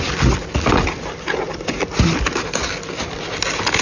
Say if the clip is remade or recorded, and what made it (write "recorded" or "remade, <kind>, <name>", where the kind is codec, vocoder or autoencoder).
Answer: recorded